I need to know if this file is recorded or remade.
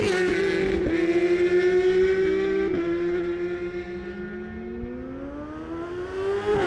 recorded